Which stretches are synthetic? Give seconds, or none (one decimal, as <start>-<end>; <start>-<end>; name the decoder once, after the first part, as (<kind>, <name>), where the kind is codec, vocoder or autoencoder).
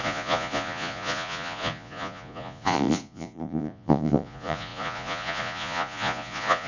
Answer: 0.0-6.7 (vocoder, Vocos)